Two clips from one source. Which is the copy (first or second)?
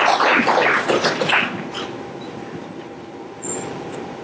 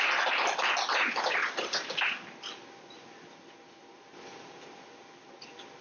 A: first